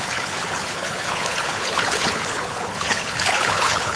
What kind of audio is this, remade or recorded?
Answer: remade